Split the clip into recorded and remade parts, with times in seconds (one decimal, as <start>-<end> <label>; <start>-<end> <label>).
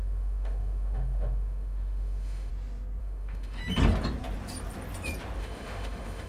0.0-2.5 remade; 2.5-3.0 recorded; 3.0-3.6 remade; 3.6-5.4 recorded; 5.4-6.3 remade